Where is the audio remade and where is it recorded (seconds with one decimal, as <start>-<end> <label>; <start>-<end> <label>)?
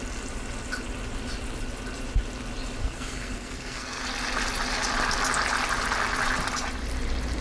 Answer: 0.0-2.8 recorded; 2.8-4.0 remade; 4.0-7.4 recorded